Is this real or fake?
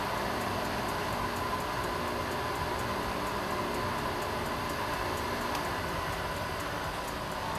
real